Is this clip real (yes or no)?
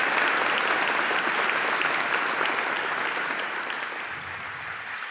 yes